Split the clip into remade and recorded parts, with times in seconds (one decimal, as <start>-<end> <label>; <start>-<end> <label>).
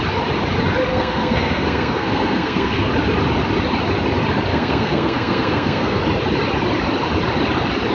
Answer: 0.0-0.9 recorded; 0.9-2.9 remade; 2.9-4.5 recorded; 4.5-6.0 remade; 6.0-7.9 recorded